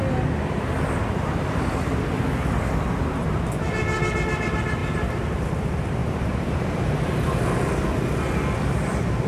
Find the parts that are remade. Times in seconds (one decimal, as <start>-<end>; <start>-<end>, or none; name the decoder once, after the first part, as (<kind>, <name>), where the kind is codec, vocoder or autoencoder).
6.0-7.7 (vocoder, BigVGAN v2)